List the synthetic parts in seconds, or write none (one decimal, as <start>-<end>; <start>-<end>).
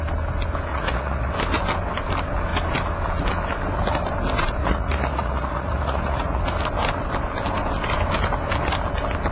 0.7-1.3; 4.6-6.4